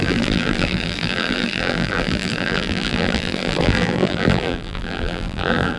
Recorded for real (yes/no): no